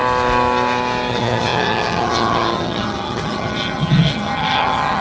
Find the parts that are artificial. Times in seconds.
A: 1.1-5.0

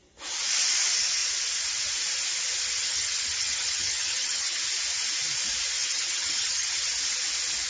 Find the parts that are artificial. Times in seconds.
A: 2.8-4.6; 5.8-6.8